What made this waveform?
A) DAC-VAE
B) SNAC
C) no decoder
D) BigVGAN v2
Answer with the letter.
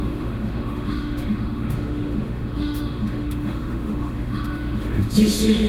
A